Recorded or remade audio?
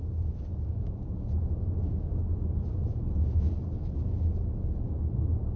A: recorded